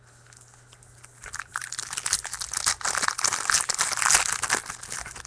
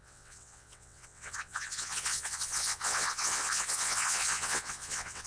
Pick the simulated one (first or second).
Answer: second